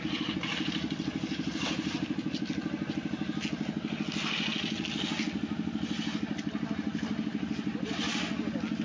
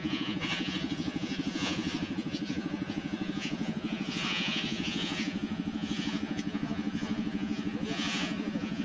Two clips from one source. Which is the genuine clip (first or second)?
first